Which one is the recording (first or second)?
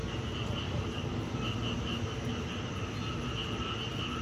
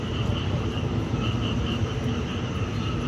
first